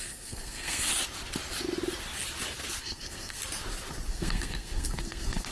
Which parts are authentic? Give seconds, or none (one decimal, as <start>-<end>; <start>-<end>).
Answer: 0.9-2.8; 3.4-4.1